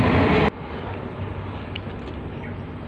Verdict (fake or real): real